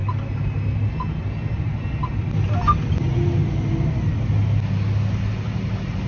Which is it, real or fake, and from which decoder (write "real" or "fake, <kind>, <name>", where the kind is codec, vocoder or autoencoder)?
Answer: real